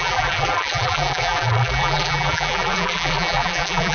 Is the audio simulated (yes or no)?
yes